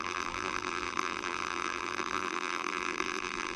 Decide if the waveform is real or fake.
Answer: fake